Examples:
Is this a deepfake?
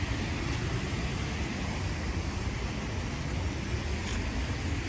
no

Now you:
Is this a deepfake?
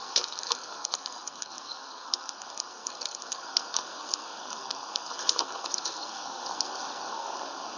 yes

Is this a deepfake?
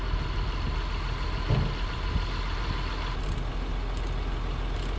no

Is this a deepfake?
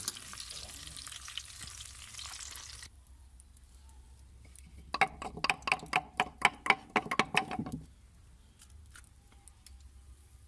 no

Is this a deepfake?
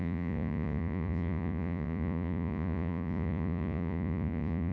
yes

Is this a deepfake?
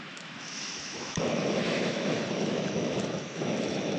yes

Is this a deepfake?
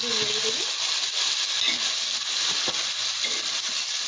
no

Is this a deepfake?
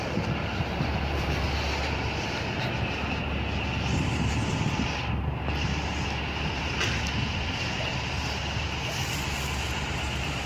no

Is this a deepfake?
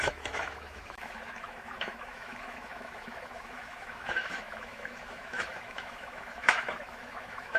yes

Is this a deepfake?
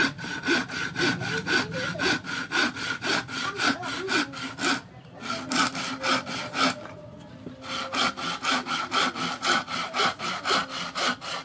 no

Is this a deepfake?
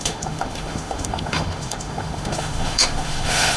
yes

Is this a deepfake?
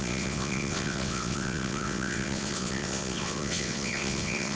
yes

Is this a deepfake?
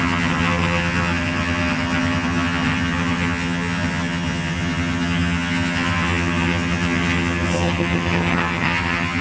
yes